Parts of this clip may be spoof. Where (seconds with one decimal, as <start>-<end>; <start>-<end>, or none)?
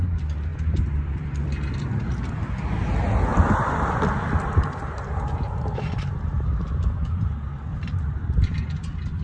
0.5-2.4; 3.3-5.1; 7.7-8.6